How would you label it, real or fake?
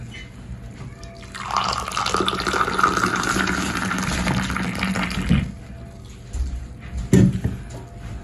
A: real